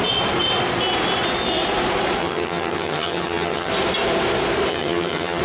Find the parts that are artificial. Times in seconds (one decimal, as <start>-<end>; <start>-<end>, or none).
2.2-3.7; 4.7-5.4